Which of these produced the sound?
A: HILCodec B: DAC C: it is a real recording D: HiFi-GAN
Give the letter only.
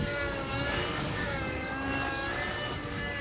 B